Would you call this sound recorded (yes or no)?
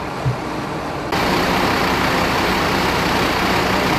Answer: yes